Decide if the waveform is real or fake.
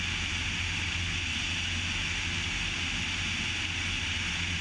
real